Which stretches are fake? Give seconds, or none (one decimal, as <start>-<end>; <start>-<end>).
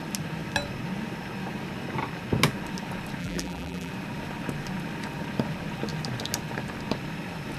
3.2-3.9